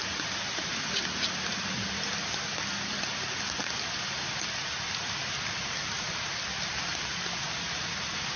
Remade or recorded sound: recorded